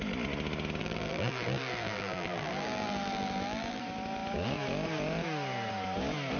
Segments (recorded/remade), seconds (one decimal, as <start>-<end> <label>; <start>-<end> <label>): 0.0-0.8 recorded; 0.8-3.8 remade; 3.8-6.4 recorded